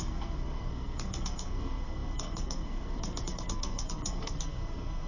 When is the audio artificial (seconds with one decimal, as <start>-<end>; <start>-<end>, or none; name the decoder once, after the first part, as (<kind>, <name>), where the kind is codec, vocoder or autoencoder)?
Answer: 0.0-5.1 (codec, SNAC)